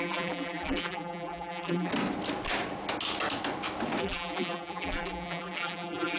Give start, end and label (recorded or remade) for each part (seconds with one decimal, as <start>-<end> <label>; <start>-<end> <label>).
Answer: 0.0-1.9 remade; 1.9-4.0 recorded; 4.0-6.2 remade